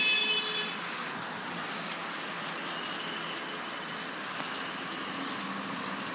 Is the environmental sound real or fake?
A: real